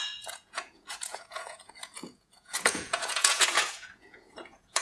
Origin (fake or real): fake